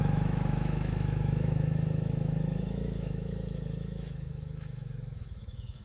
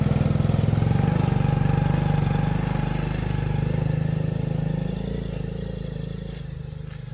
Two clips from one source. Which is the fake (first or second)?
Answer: first